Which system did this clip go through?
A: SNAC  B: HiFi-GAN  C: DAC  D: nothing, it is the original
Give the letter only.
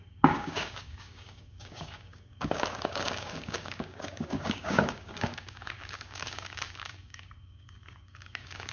C